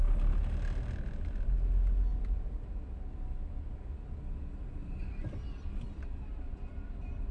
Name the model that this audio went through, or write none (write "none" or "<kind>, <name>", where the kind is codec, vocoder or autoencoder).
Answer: none